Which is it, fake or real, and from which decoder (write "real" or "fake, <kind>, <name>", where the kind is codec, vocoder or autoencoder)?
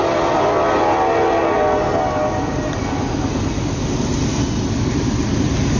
real